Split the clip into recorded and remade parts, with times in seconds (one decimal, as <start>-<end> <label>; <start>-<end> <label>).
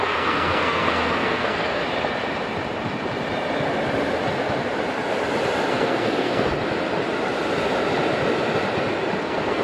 0.0-1.8 remade; 1.8-5.7 recorded; 5.7-6.5 remade; 6.5-9.2 recorded; 9.2-9.6 remade